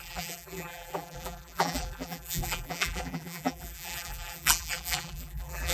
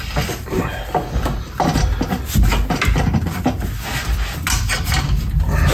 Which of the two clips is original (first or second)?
second